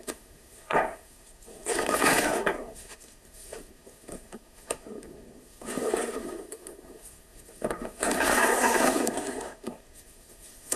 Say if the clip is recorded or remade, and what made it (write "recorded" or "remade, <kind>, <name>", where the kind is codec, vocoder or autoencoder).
remade, codec, SNAC